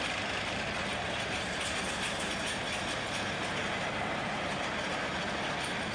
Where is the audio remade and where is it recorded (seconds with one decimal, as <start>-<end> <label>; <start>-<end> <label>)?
0.0-0.9 recorded; 0.9-2.8 remade; 2.8-3.6 recorded; 3.6-5.1 remade; 5.1-5.9 recorded